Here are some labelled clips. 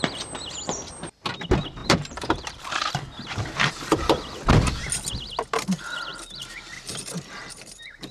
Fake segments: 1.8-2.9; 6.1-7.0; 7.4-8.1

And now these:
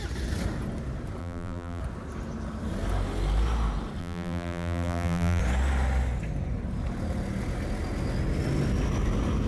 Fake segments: 1.2-1.8; 4.0-5.4